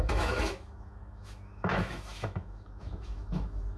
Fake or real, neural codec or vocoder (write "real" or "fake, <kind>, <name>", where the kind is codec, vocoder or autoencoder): fake, autoencoder, DAC-VAE